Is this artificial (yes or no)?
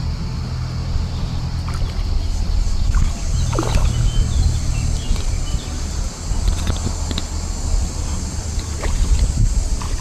no